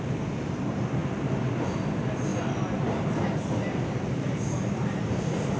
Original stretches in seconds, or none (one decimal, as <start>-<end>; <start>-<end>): 0.0-5.6